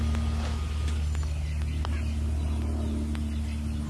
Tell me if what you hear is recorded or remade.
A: recorded